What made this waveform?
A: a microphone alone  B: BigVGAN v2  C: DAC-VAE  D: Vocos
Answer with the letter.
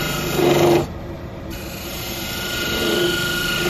B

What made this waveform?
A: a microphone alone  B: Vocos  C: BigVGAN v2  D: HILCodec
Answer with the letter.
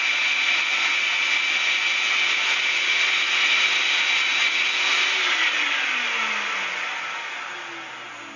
A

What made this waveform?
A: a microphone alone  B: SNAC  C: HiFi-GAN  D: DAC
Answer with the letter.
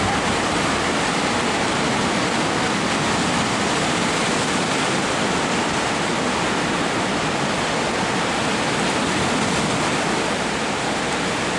A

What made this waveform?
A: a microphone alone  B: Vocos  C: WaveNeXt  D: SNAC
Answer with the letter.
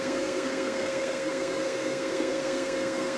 D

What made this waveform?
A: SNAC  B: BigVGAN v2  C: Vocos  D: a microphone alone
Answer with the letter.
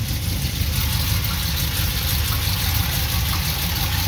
D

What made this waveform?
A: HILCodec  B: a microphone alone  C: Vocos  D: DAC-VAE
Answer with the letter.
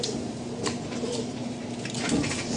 B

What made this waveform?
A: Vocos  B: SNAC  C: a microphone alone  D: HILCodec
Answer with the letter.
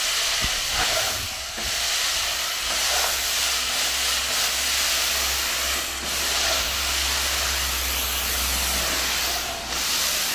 C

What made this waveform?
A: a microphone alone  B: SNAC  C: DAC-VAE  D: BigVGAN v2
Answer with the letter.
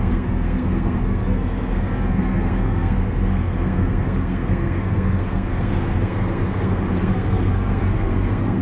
B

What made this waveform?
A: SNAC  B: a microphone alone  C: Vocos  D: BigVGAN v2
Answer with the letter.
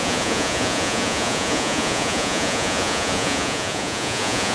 C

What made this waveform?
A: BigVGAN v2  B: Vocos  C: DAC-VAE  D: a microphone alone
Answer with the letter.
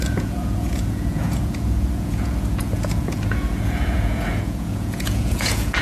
B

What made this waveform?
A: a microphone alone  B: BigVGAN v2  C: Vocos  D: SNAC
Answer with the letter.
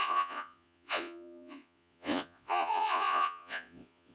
C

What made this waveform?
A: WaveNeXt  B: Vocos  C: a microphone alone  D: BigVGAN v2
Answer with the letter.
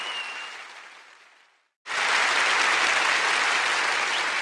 C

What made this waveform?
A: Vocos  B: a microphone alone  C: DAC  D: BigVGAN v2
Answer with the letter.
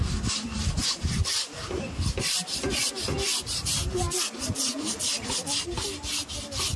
D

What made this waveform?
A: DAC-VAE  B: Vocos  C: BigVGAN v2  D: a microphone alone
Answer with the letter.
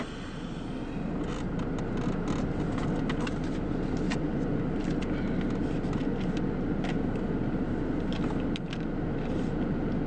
D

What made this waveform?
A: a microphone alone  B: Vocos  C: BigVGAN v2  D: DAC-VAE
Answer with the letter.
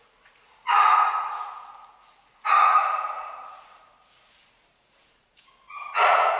B